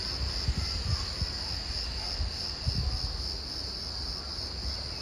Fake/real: real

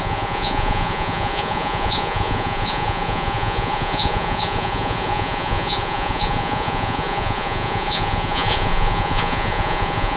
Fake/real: fake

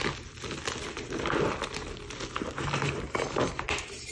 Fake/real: real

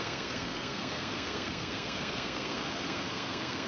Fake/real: fake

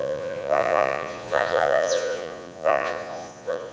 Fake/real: fake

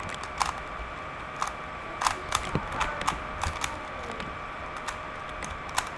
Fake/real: real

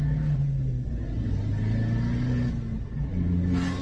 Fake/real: real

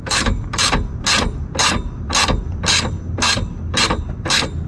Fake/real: fake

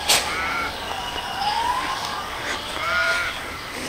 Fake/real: fake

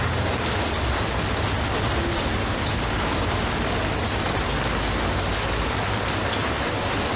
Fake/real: real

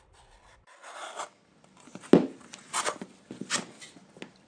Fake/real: real